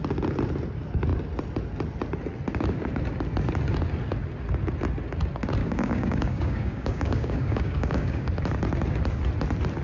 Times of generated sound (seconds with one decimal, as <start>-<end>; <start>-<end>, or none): 5.6-8.3